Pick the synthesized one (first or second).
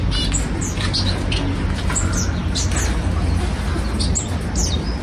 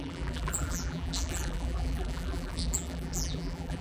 second